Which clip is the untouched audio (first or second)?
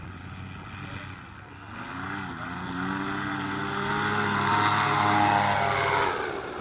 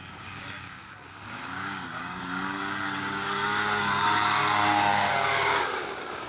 first